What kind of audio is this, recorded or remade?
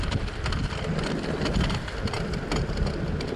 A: recorded